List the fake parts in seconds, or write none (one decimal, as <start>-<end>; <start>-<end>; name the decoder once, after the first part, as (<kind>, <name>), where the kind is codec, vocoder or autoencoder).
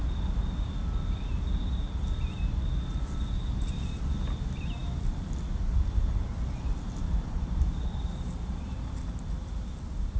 none